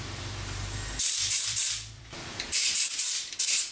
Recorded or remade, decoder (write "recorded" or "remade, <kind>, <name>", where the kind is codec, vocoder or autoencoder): remade, vocoder, BigVGAN v2